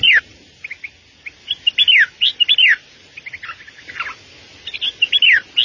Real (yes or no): yes